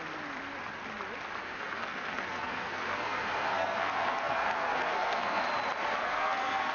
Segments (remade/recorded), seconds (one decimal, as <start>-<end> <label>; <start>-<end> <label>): 0.0-1.4 recorded; 1.4-5.4 remade; 5.4-6.0 recorded; 6.0-6.7 remade